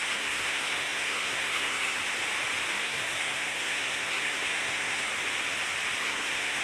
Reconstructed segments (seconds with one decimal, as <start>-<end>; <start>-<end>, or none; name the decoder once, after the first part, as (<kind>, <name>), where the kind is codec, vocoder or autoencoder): 0.0-2.0 (codec, SNAC); 2.8-5.1; 6.0-6.6